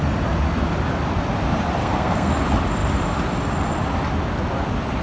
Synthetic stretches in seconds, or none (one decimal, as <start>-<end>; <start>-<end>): 1.8-2.3